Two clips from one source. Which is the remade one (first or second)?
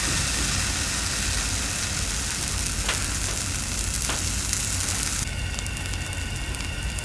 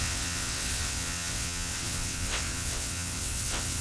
second